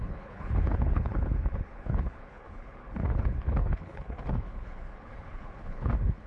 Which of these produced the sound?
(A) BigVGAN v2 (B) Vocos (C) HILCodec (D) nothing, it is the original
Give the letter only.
C